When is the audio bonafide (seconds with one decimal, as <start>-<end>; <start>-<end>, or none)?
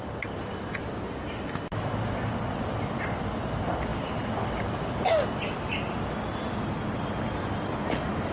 0.0-8.3